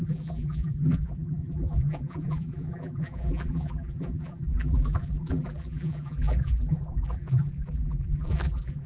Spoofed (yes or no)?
yes